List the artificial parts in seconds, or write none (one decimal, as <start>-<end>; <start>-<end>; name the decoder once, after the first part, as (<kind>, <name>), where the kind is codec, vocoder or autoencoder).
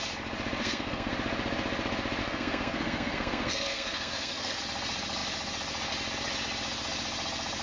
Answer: 0.6-1.1 (codec, SNAC); 2.2-4.6